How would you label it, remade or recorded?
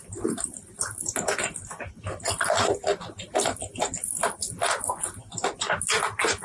recorded